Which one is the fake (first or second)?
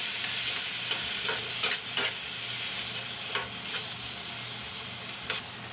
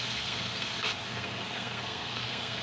second